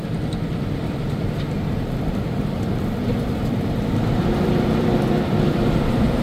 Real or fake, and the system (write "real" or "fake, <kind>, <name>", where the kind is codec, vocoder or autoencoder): fake, vocoder, BigVGAN v2